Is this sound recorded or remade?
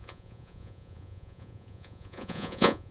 remade